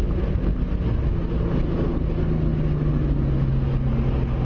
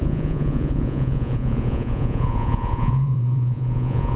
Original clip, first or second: first